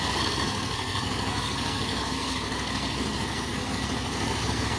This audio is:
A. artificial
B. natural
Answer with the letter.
A